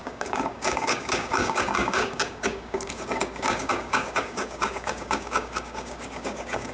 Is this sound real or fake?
fake